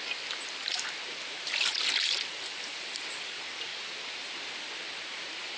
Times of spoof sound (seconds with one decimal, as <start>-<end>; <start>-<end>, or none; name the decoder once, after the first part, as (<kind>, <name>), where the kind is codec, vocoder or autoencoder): 3.7-4.3 (vocoder, BigVGAN v2)